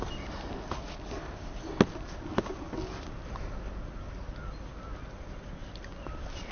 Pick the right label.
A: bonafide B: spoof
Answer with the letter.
A